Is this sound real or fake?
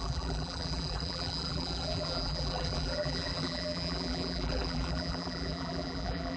fake